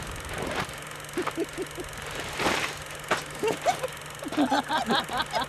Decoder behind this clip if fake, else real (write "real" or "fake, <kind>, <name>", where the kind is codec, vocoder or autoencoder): real